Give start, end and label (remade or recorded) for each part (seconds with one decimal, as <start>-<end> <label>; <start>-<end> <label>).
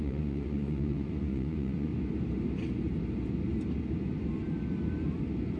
0.0-1.9 remade; 1.9-5.6 recorded